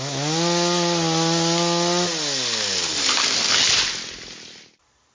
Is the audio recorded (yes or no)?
yes